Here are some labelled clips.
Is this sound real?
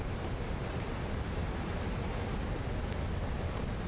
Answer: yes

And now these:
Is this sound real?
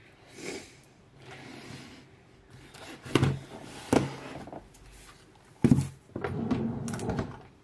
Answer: yes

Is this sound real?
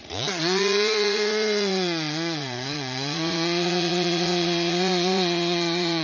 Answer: no